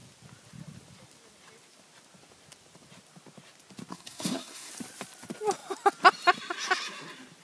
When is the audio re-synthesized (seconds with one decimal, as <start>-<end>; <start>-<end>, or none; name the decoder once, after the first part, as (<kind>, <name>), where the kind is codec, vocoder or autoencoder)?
3.9-4.7 (codec, SNAC)